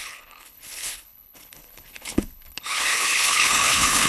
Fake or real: fake